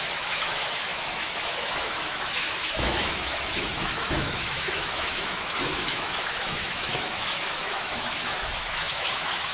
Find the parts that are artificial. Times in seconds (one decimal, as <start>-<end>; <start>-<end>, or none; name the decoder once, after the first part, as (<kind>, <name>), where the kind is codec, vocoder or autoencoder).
0.0-9.5 (autoencoder, DAC-VAE)

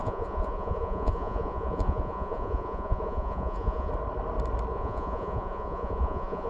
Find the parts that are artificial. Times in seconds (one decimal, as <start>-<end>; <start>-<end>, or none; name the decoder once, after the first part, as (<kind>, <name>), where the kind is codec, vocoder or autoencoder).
0.0-3.9 (vocoder, Vocos); 4.7-6.5

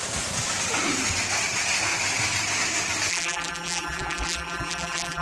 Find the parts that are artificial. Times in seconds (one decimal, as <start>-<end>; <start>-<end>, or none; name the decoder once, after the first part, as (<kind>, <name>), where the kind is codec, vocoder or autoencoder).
3.1-5.2 (vocoder, BigVGAN v2)

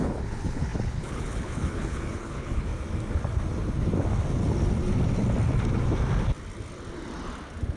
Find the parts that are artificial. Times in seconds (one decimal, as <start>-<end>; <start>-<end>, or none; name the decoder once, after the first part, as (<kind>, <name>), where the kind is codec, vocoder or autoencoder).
0.0-2.7 (codec, HILCodec)

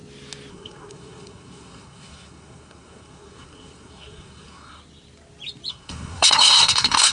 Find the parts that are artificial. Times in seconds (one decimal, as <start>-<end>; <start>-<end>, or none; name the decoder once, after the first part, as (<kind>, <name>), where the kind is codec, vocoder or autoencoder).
0.5-4.8 (codec, SNAC); 5.7-7.1

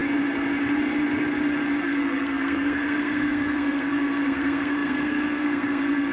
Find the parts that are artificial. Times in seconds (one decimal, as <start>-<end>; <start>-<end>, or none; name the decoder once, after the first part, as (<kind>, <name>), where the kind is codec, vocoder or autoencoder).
1.8-6.1 (codec, SNAC)